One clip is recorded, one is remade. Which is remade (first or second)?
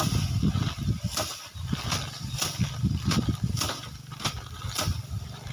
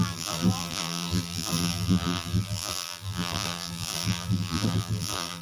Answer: second